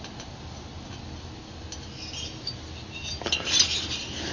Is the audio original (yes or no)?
yes